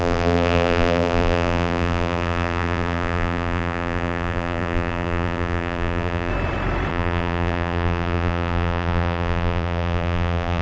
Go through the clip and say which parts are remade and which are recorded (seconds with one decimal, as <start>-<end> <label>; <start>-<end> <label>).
0.0-6.3 remade; 6.3-6.9 recorded; 6.9-10.6 remade

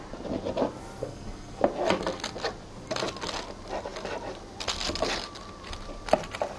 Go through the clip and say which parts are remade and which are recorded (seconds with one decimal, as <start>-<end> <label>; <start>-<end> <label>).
0.0-1.0 recorded; 1.0-1.6 remade; 1.6-6.6 recorded

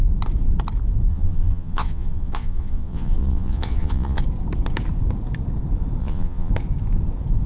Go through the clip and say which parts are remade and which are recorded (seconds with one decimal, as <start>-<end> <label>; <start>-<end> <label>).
0.0-1.1 recorded; 1.1-4.2 remade; 4.2-6.0 recorded; 6.0-6.5 remade; 6.5-7.5 recorded

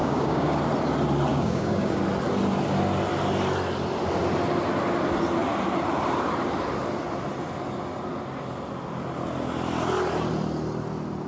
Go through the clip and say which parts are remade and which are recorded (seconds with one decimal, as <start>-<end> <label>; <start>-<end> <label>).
0.0-0.6 remade; 0.6-1.3 recorded; 1.3-2.0 remade; 2.0-11.3 recorded

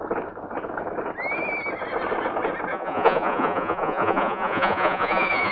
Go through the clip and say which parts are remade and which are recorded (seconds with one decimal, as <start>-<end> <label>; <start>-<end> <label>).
0.0-2.7 recorded; 2.7-5.5 remade